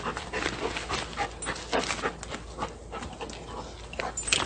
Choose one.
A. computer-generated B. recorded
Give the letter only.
B